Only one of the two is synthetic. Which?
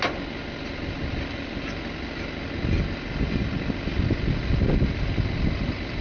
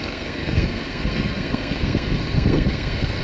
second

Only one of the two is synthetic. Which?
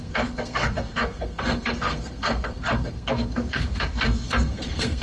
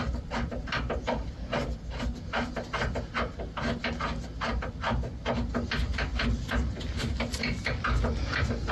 first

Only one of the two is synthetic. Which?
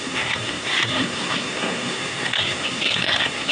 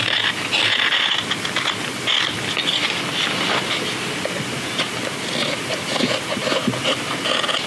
first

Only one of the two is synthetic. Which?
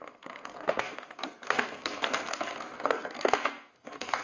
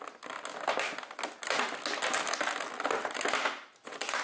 first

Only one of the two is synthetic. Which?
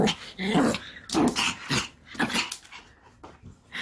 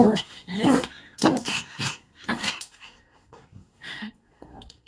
second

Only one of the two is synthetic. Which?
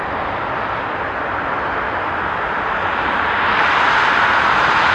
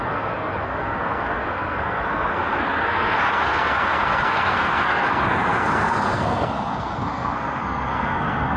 second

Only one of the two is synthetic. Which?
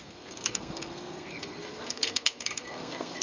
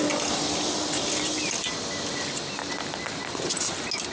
first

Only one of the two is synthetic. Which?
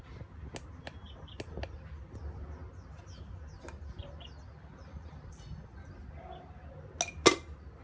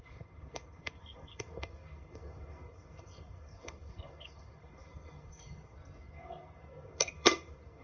second